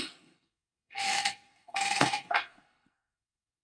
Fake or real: fake